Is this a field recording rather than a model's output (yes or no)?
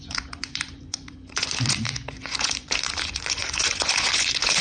no